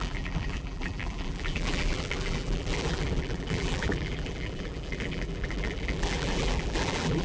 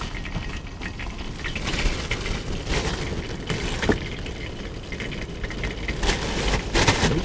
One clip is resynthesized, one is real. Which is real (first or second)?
second